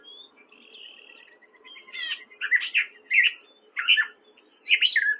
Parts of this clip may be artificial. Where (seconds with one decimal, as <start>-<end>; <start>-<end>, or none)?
none